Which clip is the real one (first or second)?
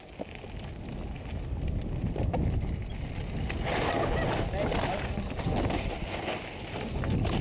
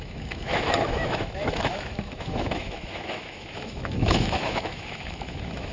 first